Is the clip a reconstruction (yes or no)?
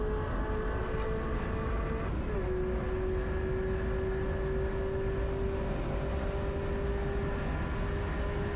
no